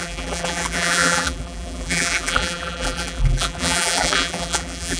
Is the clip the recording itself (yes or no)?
no